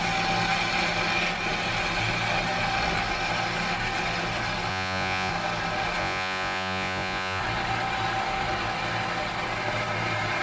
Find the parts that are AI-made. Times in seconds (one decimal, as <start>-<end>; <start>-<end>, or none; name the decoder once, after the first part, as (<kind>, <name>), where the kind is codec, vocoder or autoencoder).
4.7-5.3 (vocoder, Vocos); 6.0-7.4